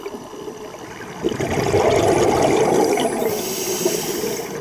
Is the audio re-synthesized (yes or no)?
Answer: no